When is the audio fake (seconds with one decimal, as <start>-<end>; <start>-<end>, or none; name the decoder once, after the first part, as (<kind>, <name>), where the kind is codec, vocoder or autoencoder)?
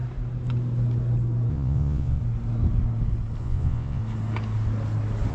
1.5-2.2 (vocoder, Vocos); 3.4-4.0